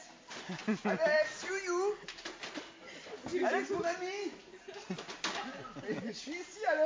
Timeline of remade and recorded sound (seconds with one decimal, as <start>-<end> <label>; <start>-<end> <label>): 0.0-6.9 recorded